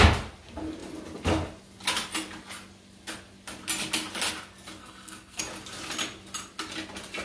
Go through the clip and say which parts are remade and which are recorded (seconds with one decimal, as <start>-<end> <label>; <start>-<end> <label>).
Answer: 0.0-4.8 recorded; 4.8-5.4 remade; 5.4-7.2 recorded